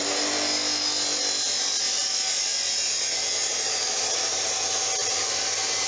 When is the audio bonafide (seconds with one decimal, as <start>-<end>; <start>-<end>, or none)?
0.0-5.9